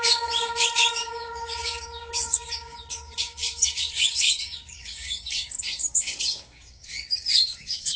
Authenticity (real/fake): fake